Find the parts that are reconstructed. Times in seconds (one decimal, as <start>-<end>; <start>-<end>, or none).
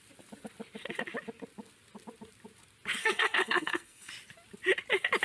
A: 3.0-4.1